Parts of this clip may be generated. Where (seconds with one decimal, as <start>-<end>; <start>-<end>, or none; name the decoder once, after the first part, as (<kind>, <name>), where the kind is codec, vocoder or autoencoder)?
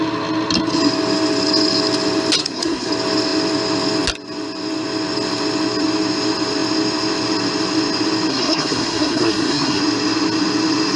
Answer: 2.4-2.9 (codec, SNAC); 8.3-9.8